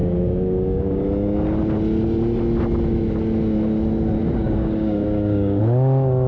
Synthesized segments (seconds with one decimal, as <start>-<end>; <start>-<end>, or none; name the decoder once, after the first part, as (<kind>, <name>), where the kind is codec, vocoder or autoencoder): 0.0-1.0 (codec, DAC); 4.2-5.6